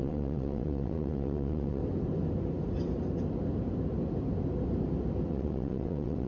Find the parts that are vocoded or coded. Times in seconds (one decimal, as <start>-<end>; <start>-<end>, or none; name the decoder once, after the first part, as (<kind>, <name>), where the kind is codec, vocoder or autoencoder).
0.0-1.8 (vocoder, WaveNeXt); 5.3-6.3